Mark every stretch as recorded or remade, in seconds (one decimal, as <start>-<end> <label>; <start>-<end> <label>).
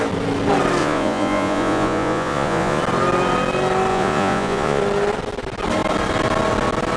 0.0-0.8 recorded; 0.8-2.8 remade; 2.8-3.9 recorded; 3.9-4.8 remade; 4.8-7.0 recorded